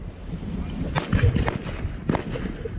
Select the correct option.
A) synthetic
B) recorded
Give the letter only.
B